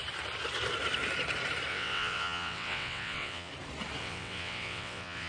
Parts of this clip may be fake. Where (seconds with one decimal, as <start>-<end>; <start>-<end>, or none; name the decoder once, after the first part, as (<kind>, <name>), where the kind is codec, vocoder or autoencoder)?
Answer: 1.7-3.5 (vocoder, WaveNeXt); 4.0-5.3